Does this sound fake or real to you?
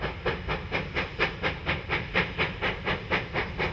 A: real